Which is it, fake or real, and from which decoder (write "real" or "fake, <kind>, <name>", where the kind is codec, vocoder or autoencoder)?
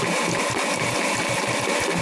real